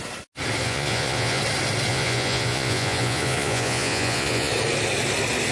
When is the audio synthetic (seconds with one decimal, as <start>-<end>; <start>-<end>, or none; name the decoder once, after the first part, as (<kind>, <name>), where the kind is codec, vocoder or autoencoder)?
0.6-1.4 (vocoder, Vocos); 1.9-4.5

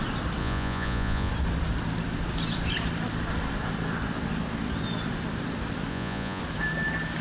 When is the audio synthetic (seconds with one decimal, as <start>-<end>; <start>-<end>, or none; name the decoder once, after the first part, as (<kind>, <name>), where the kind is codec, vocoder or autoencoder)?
0.4-1.3 (vocoder, Vocos); 5.9-6.4